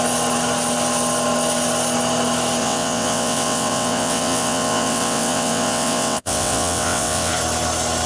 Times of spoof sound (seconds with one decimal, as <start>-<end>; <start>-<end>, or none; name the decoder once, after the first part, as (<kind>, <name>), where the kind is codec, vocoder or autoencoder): 2.6-7.3 (vocoder, WaveNeXt)